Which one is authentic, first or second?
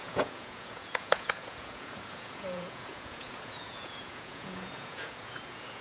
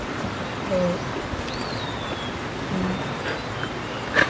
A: second